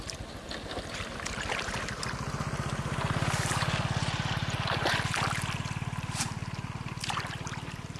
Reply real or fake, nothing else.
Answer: real